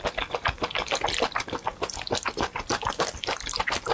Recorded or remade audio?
recorded